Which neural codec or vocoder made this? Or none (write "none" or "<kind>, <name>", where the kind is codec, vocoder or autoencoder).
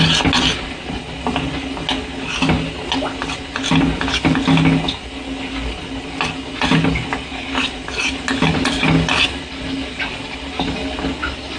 none